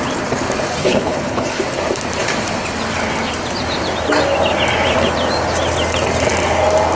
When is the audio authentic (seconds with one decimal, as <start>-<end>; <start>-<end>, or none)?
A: 0.0-0.8; 1.6-6.9